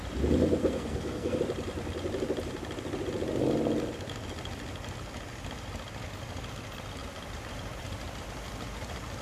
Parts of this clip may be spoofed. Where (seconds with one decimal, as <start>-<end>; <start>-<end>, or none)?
0.6-1.4